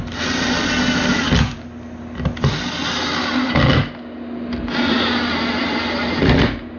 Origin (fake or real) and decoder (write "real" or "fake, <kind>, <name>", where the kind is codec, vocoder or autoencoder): real